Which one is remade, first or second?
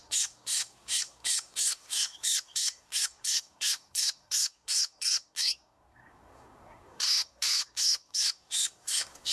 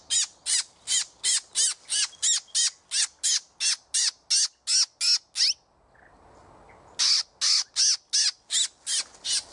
first